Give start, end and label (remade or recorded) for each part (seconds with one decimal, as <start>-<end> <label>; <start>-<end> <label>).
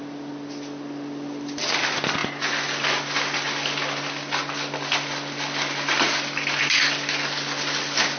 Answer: 0.0-8.2 recorded